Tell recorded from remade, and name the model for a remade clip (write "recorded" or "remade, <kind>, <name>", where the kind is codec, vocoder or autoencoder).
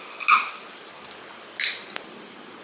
recorded